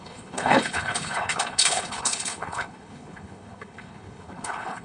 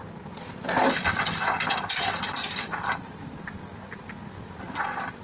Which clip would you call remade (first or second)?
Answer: first